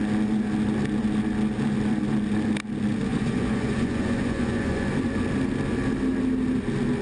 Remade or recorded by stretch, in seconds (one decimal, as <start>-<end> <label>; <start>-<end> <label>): 0.0-3.1 recorded; 3.1-4.9 remade; 4.9-7.0 recorded